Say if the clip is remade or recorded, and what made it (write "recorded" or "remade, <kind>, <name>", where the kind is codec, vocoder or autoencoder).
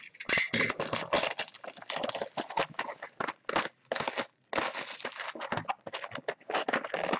recorded